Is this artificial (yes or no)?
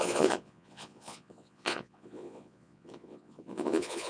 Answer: yes